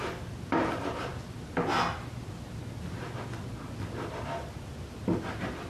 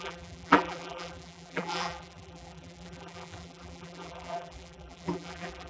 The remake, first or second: second